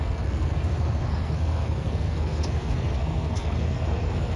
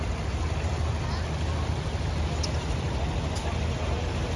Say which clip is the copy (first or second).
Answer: first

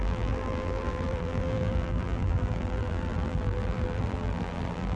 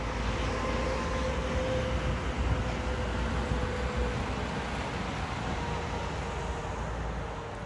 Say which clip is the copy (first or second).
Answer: first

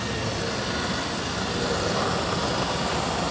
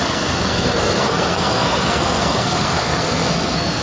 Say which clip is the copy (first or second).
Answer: second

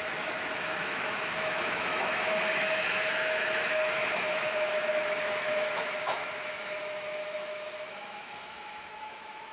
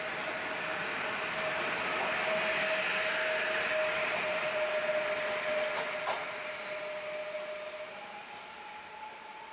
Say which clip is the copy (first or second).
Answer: first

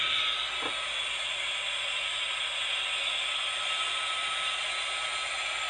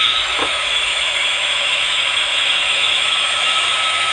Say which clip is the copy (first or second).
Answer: second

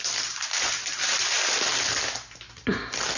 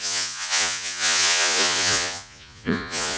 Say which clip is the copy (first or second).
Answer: second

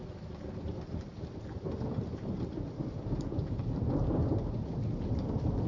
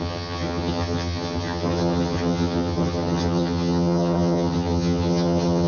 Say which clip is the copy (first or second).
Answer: second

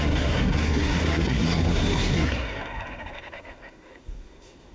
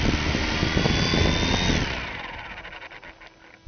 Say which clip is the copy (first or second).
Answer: first